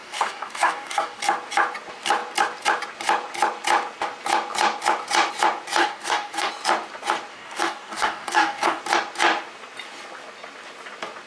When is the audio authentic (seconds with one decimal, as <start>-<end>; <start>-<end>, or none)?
1.2-5.8; 6.5-7.3; 8.8-11.3